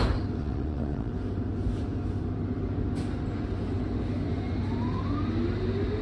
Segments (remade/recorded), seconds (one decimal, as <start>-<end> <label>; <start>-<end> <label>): 0.0-0.4 recorded; 0.4-1.1 remade; 1.1-6.0 recorded